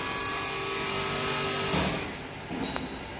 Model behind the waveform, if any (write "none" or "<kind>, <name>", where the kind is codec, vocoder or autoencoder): none